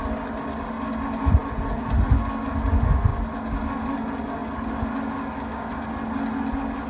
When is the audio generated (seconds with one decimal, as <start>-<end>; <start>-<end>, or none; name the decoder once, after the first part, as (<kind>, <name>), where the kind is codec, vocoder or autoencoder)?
none